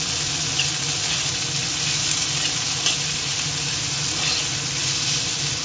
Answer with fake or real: real